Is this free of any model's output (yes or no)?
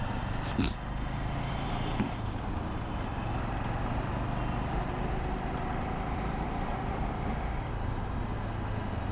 yes